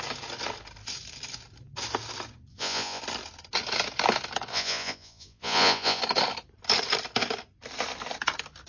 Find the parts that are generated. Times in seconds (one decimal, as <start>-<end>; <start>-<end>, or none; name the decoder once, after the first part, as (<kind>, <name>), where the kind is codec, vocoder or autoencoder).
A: 2.5-3.0 (vocoder, Vocos); 4.5-6.0